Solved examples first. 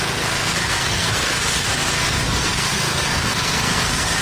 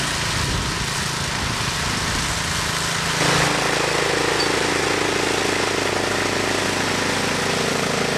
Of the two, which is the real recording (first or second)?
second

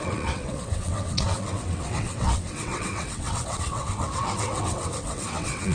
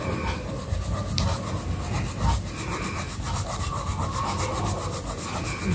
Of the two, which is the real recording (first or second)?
second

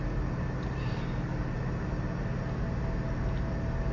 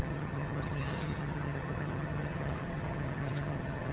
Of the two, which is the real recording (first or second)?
first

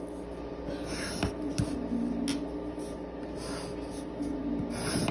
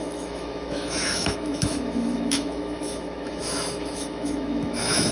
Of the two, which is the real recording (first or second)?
first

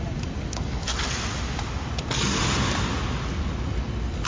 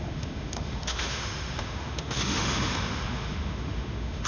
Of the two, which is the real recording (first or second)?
first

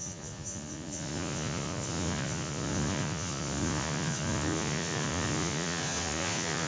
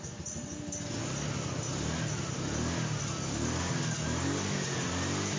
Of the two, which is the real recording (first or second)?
second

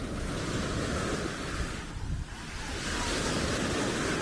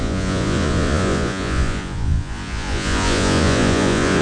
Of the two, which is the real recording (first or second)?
first